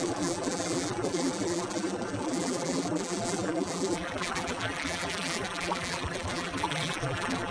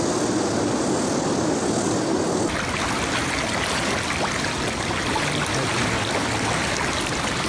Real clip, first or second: second